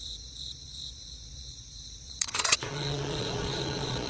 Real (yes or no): no